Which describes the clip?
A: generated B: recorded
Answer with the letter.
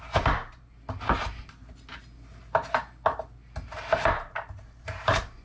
B